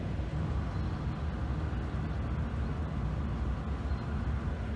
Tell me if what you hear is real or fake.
real